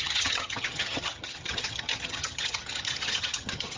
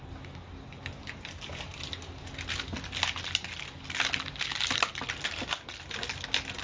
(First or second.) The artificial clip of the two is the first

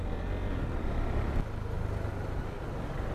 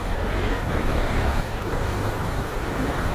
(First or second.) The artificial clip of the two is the second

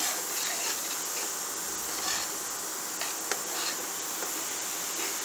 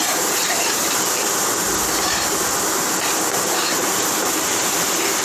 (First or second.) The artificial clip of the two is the second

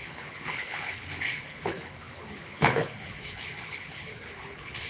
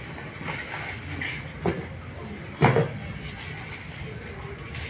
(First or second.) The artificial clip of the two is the first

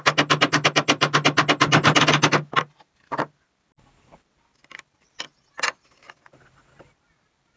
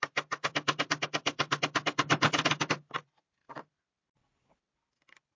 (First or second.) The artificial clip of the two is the second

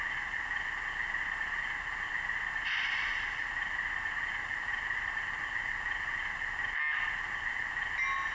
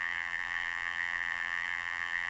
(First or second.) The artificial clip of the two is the second